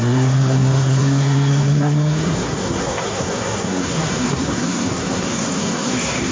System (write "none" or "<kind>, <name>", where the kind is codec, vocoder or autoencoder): codec, SNAC